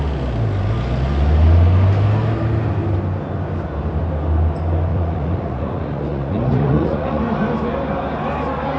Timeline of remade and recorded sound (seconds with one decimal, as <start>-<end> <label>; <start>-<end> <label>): 0.0-4.9 recorded; 4.9-7.2 remade; 7.2-8.8 recorded